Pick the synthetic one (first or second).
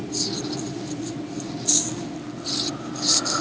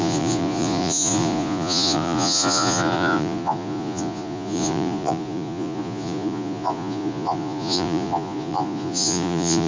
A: second